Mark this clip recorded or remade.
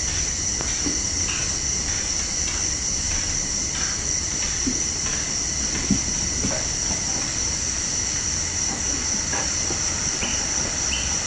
recorded